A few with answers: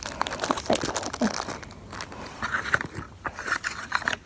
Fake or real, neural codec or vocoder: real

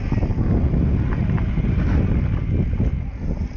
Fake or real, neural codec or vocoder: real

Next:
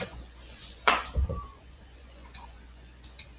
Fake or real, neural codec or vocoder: fake, vocoder, Vocos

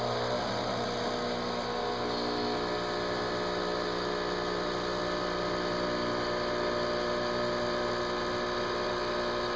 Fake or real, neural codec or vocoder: real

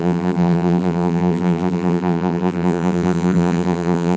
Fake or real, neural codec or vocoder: fake, vocoder, BigVGAN v2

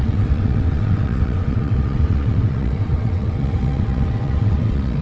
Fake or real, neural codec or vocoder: fake, vocoder, WaveNeXt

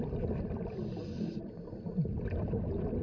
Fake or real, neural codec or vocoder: real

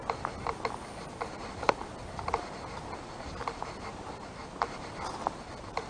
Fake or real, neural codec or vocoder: real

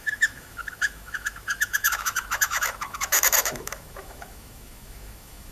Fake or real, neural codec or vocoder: fake, autoencoder, DAC-VAE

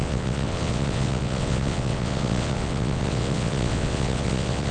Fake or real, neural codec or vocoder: fake, vocoder, WaveNeXt